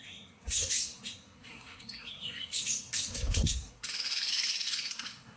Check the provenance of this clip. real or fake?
fake